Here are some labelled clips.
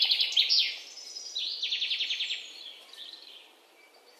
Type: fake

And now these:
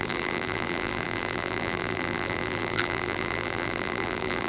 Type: fake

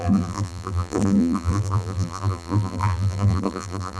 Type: fake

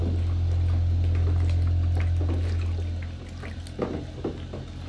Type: real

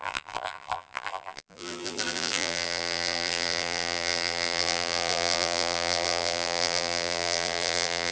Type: fake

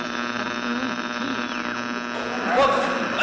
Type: real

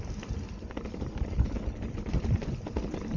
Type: real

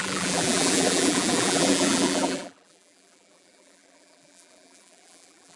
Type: fake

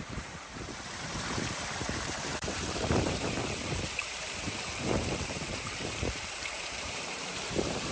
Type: fake